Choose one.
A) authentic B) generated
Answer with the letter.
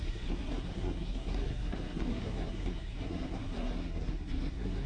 B